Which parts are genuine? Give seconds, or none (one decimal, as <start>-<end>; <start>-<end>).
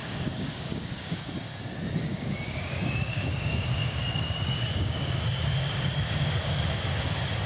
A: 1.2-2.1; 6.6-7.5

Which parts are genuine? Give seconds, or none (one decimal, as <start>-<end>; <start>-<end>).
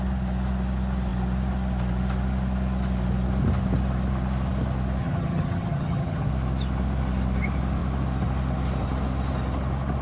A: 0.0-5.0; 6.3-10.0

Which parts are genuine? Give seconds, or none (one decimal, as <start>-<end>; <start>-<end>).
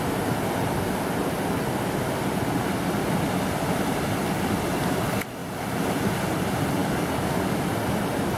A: 0.0-6.8; 7.6-8.4